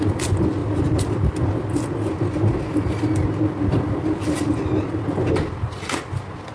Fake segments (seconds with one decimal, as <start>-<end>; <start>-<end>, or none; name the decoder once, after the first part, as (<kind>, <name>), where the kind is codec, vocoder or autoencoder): none